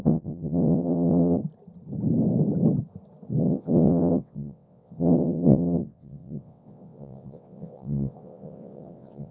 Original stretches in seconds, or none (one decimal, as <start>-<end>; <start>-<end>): 1.4-3.4